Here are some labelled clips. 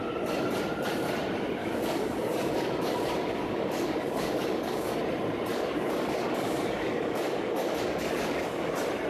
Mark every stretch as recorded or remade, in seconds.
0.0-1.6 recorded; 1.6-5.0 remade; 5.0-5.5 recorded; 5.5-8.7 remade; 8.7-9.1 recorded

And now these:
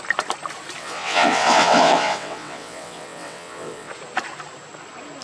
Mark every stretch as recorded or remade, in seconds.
0.0-0.8 recorded; 0.8-3.9 remade; 3.9-5.2 recorded

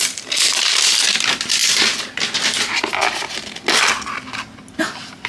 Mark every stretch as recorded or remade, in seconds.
0.0-5.3 recorded

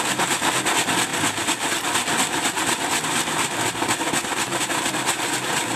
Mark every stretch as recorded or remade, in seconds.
0.0-5.8 recorded

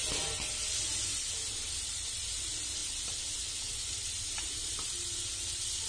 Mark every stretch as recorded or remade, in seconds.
0.0-5.9 recorded

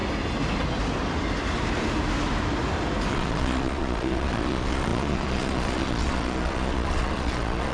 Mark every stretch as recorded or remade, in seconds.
0.0-3.1 recorded; 3.1-7.7 remade

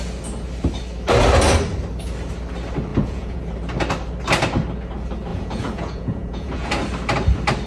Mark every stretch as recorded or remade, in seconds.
0.0-2.9 recorded; 2.9-3.4 remade; 3.4-5.3 recorded; 5.3-6.7 remade; 6.7-7.7 recorded